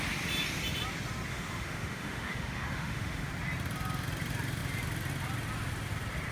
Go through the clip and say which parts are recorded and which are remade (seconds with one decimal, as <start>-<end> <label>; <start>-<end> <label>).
0.0-1.3 recorded; 1.3-3.3 remade; 3.3-6.3 recorded